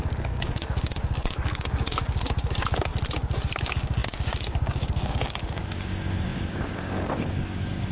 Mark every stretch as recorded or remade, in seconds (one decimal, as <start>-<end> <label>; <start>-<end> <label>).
0.0-2.9 remade; 2.9-3.6 recorded; 3.6-7.9 remade